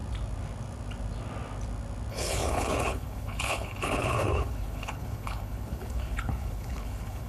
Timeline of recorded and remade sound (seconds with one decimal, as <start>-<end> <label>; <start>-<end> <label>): 0.0-2.1 recorded; 2.1-7.3 remade